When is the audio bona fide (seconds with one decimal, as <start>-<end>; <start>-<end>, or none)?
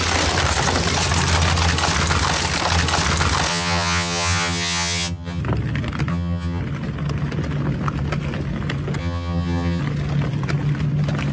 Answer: 0.0-3.5; 5.4-6.1; 6.6-9.0; 9.8-11.3